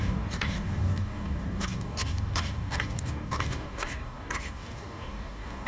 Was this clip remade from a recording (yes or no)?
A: yes